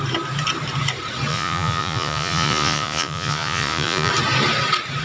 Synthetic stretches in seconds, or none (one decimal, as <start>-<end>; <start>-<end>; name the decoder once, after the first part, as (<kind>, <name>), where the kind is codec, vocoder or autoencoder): 1.3-4.1 (vocoder, Vocos)

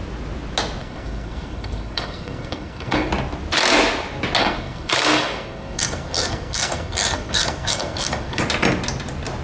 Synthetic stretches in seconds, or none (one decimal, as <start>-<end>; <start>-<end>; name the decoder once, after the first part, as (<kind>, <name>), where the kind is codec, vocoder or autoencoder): 0.8-3.1 (codec, SNAC); 4.4-8.4